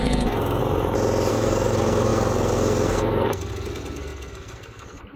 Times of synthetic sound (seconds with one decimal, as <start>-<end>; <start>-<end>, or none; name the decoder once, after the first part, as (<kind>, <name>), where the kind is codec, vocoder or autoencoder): 0.0-0.6 (codec, SNAC); 1.3-5.2